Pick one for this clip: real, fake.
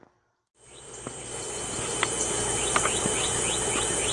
real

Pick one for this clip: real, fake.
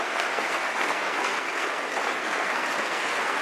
fake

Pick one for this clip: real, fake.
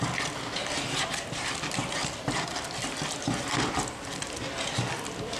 real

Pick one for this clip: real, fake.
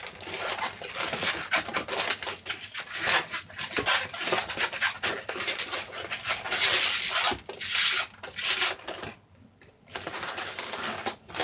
real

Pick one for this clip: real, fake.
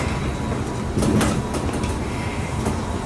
real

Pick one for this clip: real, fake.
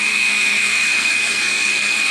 fake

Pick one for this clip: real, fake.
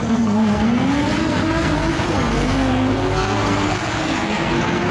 fake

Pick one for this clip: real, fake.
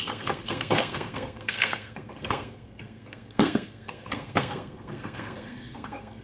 fake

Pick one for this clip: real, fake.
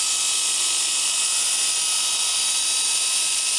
real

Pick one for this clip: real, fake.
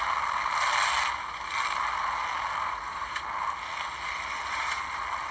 real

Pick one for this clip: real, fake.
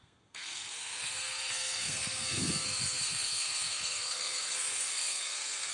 fake